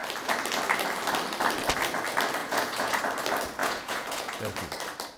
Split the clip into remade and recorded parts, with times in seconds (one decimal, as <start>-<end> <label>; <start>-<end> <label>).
0.0-2.4 recorded; 2.4-3.0 remade; 3.0-3.6 recorded; 3.6-4.3 remade; 4.3-5.2 recorded